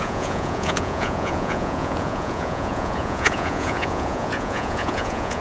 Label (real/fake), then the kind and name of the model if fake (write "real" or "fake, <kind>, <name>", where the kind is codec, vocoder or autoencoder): fake, vocoder, Vocos